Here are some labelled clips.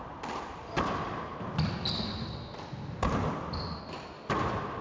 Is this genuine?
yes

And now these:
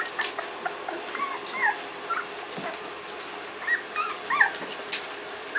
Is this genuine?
yes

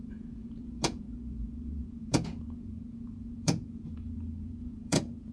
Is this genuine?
no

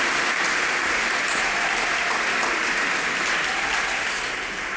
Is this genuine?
yes